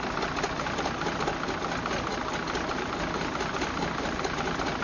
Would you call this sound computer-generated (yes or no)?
no